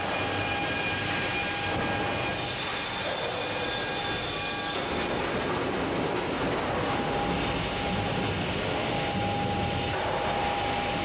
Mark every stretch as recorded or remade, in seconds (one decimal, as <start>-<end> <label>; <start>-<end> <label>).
0.0-11.0 recorded

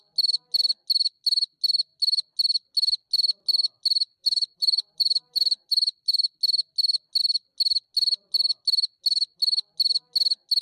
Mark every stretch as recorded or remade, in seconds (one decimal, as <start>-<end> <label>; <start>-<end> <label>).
0.0-4.2 recorded; 4.2-6.4 remade; 6.4-10.6 recorded

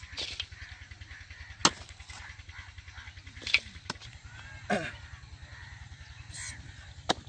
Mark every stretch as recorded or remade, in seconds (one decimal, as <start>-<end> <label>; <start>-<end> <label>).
0.0-7.3 recorded

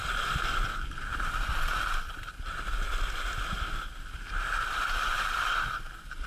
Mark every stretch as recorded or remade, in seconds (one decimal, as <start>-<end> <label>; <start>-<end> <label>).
0.0-6.3 recorded

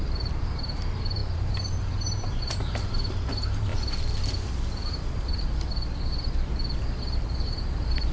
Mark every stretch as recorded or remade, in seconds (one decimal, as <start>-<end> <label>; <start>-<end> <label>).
0.0-3.7 remade; 3.7-4.9 recorded; 4.9-8.1 remade

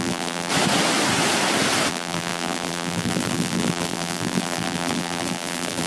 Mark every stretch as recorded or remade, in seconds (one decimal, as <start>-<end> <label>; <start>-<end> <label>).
0.0-0.5 remade; 0.5-1.9 recorded; 1.9-5.9 remade

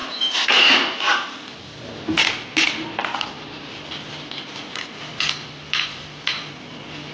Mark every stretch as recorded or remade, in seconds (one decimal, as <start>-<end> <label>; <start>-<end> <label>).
0.0-1.1 recorded; 1.1-1.6 remade; 1.6-3.0 recorded; 3.0-6.3 remade; 6.3-7.1 recorded